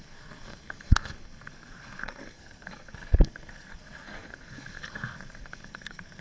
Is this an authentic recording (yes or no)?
no